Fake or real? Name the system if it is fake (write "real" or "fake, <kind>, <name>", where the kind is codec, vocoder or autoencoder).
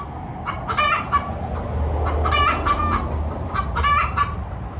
real